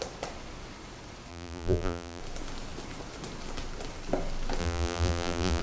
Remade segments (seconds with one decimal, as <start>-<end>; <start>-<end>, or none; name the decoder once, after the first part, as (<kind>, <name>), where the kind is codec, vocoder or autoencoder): 1.3-2.2 (vocoder, BigVGAN v2); 4.6-5.6